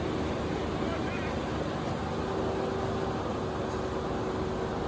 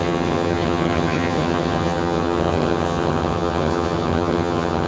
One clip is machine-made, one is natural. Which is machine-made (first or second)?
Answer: second